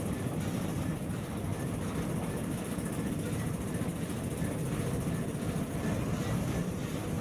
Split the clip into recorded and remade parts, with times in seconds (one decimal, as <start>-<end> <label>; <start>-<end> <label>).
0.0-7.2 recorded